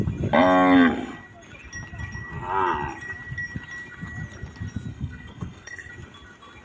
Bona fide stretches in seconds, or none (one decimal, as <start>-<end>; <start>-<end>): 0.0-4.9; 5.9-6.6